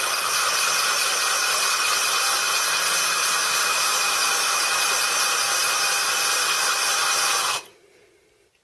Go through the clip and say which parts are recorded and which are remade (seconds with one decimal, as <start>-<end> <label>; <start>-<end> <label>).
0.0-3.4 recorded; 3.4-4.6 remade; 4.6-8.6 recorded

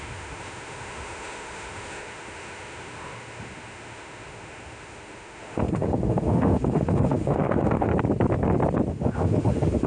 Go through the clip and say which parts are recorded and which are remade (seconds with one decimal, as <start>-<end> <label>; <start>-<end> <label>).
0.0-7.9 remade; 7.9-8.9 recorded; 8.9-9.9 remade

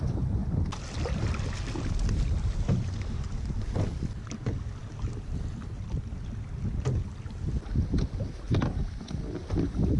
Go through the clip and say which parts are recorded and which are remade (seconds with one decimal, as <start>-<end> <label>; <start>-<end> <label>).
0.0-10.0 recorded

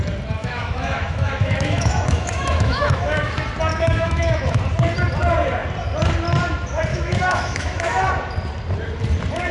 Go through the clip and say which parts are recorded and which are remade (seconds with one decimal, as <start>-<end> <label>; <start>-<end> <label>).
0.0-0.4 recorded; 0.4-3.3 remade; 3.3-3.7 recorded; 3.7-4.6 remade; 4.6-6.9 recorded; 6.9-8.1 remade; 8.1-9.5 recorded

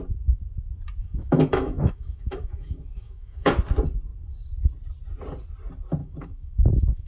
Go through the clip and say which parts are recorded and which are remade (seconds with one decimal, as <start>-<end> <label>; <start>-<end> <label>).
0.0-1.0 recorded; 1.0-3.5 remade; 3.5-6.0 recorded; 6.0-7.1 remade

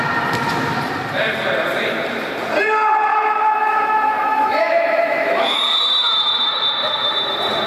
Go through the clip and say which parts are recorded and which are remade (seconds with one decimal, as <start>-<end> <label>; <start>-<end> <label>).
0.0-3.1 recorded; 3.1-5.6 remade; 5.6-7.7 recorded